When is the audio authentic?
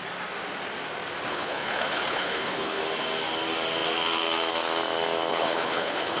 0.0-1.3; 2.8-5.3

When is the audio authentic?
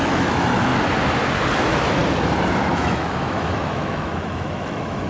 0.7-1.6; 2.0-2.7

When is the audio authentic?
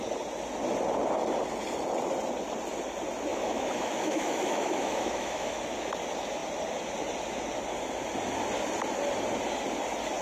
0.0-3.3; 5.6-10.2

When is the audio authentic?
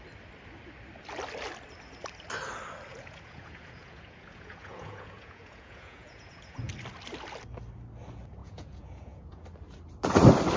0.0-2.9; 6.7-8.4; 9.4-10.6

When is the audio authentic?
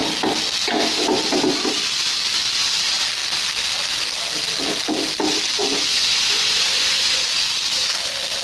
0.0-5.9; 7.2-8.4